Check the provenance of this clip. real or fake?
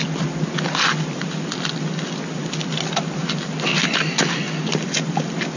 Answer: real